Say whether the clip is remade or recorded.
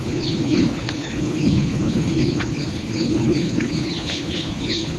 remade